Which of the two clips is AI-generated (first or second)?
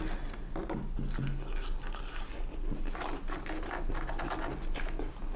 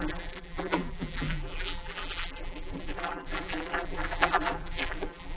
second